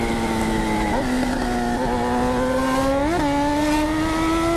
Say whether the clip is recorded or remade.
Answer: recorded